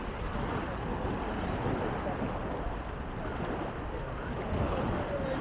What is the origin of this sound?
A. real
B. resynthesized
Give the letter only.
A